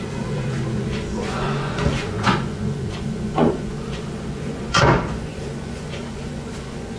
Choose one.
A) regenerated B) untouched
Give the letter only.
A